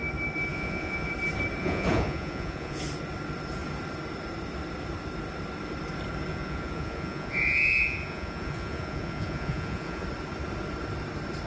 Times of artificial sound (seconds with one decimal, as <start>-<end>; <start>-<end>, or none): 0.5-1.1; 1.6-2.8; 6.3-10.0